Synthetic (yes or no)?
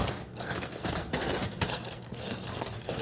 yes